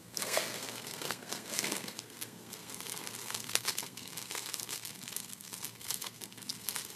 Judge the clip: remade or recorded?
remade